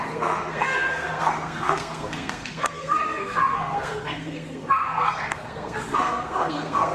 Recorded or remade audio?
remade